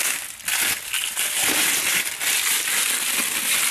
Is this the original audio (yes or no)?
yes